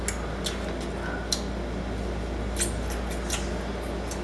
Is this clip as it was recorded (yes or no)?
yes